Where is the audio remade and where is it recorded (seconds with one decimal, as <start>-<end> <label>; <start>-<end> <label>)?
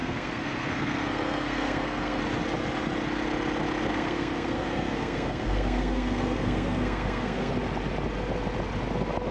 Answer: 0.0-2.2 remade; 2.2-3.9 recorded; 3.9-7.5 remade; 7.5-9.3 recorded